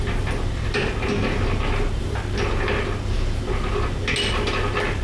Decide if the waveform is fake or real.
real